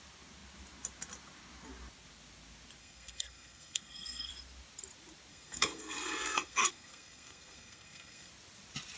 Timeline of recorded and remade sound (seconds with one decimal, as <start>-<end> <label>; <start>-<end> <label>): 0.0-2.8 recorded; 2.8-4.3 remade; 4.3-5.3 recorded; 5.3-8.3 remade; 8.3-9.0 recorded